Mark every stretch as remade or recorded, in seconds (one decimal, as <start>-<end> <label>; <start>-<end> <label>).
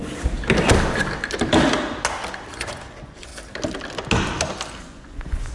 0.0-2.5 recorded; 2.5-3.3 remade; 3.3-4.8 recorded; 4.8-5.5 remade